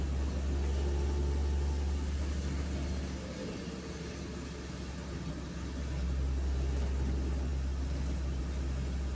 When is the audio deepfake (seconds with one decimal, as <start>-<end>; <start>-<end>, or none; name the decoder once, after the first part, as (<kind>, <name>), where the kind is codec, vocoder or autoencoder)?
none